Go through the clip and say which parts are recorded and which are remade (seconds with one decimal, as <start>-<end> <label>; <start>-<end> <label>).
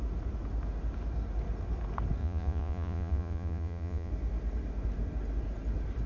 0.0-2.2 recorded; 2.2-4.1 remade; 4.1-6.1 recorded